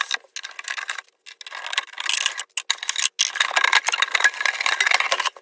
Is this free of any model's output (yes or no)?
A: yes